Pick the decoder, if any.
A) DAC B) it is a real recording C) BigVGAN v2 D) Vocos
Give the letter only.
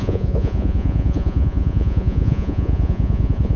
D